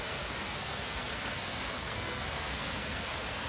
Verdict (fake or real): fake